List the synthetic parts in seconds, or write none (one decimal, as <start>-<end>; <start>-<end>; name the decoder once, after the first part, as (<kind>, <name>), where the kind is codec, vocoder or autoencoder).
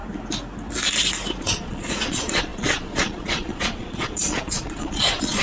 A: 1.4-5.4 (vocoder, Vocos)